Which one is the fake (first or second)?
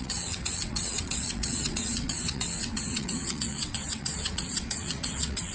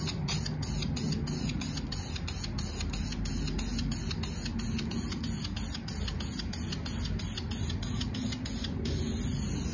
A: first